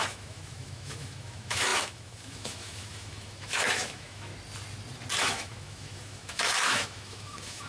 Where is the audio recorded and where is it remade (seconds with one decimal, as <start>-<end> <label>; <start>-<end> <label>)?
0.0-4.3 remade; 4.3-5.2 recorded; 5.2-7.7 remade